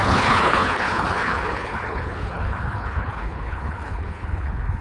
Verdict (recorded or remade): remade